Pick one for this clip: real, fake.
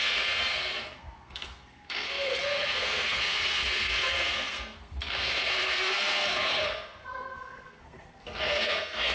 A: fake